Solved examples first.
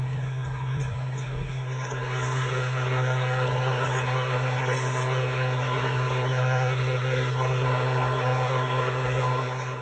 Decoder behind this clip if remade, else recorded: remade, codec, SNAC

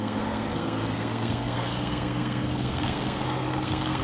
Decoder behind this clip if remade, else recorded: remade, codec, SNAC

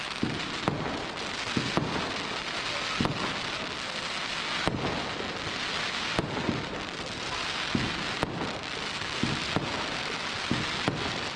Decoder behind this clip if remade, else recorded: recorded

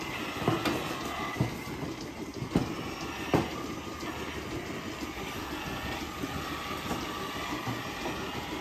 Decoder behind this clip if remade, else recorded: recorded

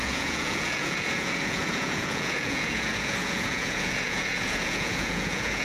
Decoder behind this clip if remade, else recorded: remade, vocoder, Vocos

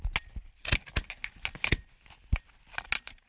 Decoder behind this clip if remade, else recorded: recorded